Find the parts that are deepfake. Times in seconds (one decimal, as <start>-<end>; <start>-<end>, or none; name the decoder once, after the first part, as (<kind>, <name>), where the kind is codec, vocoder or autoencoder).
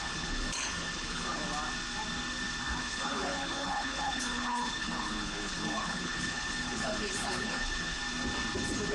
0.0-1.4 (codec, HILCodec); 2.8-8.0